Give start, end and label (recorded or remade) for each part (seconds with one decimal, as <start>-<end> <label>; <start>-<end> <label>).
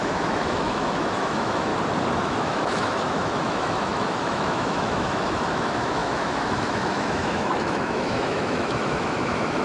0.0-1.7 remade; 1.7-2.2 recorded; 2.2-9.6 remade